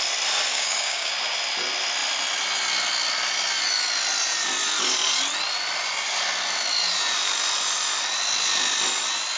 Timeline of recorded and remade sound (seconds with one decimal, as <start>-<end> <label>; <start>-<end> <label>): 0.0-0.5 recorded; 0.5-1.1 remade; 1.1-9.4 recorded